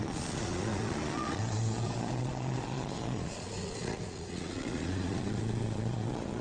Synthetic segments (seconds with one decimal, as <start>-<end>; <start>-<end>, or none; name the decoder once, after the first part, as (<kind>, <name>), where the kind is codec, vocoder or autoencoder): 0.0-6.4 (vocoder, Vocos)